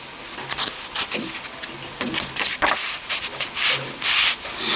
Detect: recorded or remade recorded